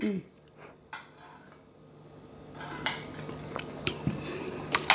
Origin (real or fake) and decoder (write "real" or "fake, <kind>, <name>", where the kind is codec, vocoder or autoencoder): real